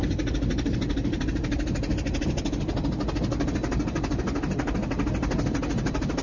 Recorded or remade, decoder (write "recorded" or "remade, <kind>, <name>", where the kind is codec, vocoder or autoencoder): recorded